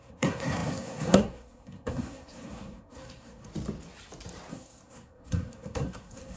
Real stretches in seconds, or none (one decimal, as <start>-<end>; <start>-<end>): 3.5-4.5